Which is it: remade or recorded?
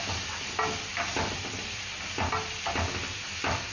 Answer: recorded